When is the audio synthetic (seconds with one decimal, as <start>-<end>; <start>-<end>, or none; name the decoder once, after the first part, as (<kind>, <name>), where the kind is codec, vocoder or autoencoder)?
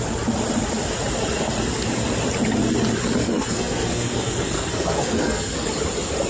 3.2-5.7 (codec, SNAC)